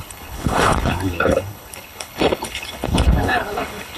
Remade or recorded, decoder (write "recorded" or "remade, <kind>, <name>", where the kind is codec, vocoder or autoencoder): remade, codec, HILCodec